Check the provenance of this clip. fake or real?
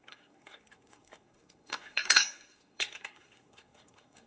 fake